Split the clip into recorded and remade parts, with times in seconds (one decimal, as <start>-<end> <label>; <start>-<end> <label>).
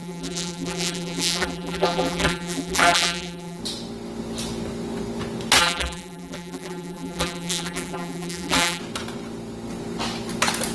0.0-3.6 remade; 3.6-5.6 recorded; 5.6-8.8 remade; 8.8-10.7 recorded